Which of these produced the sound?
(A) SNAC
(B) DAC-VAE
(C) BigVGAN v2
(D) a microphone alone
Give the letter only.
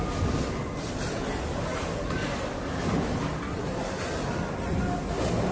D